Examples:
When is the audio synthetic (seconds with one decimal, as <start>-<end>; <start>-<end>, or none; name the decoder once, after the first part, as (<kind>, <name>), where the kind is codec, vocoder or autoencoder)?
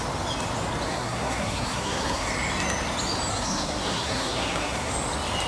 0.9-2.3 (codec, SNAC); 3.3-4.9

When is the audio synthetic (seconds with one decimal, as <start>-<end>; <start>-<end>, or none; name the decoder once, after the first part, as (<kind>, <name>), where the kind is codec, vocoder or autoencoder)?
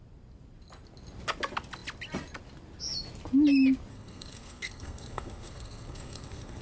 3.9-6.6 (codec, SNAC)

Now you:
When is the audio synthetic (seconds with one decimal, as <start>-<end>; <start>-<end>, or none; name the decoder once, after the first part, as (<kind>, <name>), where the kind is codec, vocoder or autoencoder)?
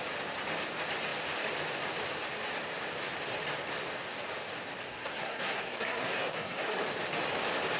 4.9-6.8 (codec, SNAC)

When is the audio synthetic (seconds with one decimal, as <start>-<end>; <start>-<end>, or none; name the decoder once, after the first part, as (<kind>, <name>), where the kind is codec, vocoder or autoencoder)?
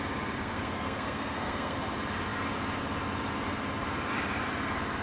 0.4-1.8 (codec, SNAC)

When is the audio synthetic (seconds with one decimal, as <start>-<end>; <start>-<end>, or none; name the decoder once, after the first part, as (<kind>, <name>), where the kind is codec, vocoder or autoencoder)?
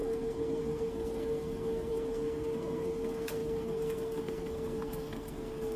0.0-5.8 (codec, SNAC)